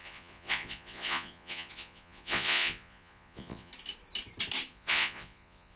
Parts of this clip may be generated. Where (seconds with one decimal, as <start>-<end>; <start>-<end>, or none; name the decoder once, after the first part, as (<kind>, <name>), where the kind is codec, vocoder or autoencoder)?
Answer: 0.0-3.7 (vocoder, Vocos); 4.7-5.8